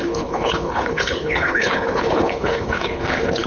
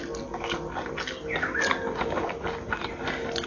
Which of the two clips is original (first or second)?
second